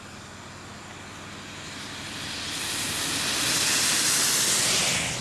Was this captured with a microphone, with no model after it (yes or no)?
yes